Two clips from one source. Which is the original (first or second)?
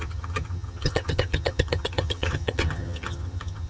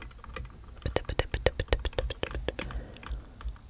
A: second